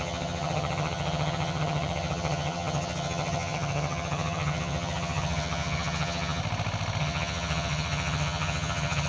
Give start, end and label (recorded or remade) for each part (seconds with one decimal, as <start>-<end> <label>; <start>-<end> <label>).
0.0-6.4 remade; 6.4-7.0 recorded; 7.0-9.1 remade